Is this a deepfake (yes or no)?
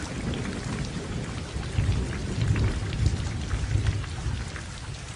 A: no